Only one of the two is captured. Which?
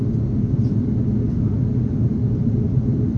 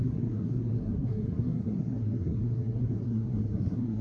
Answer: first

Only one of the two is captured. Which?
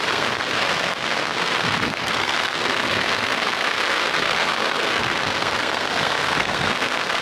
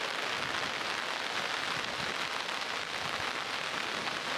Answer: second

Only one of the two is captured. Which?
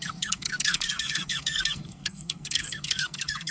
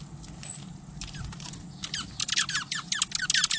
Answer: second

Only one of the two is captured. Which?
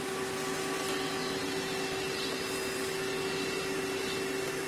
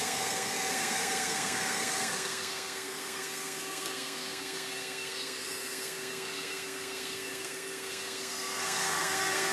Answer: first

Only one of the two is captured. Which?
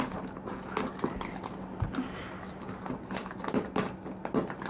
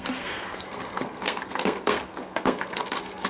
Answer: first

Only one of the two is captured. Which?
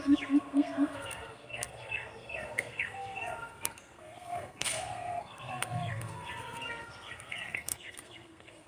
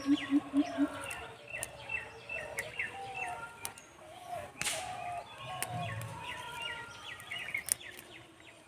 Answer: second